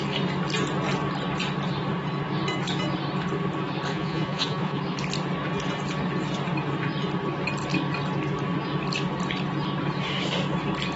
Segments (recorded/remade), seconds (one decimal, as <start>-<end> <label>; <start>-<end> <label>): 0.0-3.9 recorded; 3.9-4.8 remade; 4.8-11.0 recorded